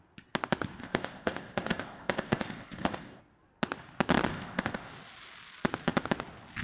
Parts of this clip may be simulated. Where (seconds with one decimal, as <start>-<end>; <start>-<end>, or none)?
0.8-3.2; 4.3-4.9

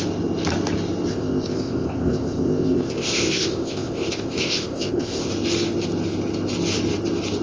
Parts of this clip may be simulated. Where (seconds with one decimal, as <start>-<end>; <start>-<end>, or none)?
1.1-5.3

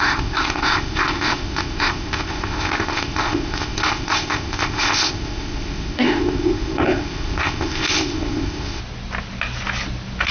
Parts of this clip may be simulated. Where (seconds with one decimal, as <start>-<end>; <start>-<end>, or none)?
0.0-8.8

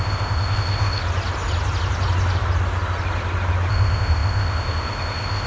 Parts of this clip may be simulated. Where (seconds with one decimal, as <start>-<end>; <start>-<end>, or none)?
0.0-1.0; 3.7-5.5